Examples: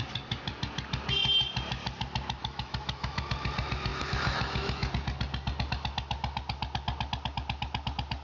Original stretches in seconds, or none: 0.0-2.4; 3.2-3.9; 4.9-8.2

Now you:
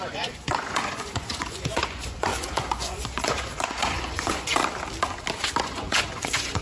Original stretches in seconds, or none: 4.6-5.6

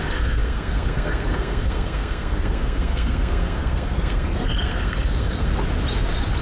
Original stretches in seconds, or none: 5.5-6.4

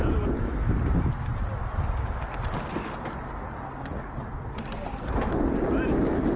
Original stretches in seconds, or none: 0.0-6.4

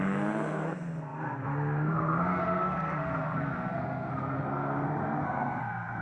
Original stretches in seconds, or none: none

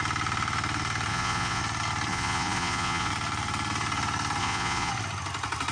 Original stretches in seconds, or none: 0.0-1.1; 1.6-2.1; 3.1-4.4; 4.9-5.7

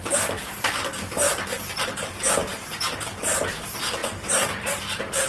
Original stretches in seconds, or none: 0.0-5.3